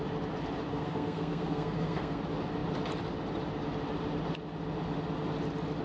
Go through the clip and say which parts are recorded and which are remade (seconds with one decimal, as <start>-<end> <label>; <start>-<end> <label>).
0.0-0.7 recorded; 0.7-2.2 remade; 2.2-5.8 recorded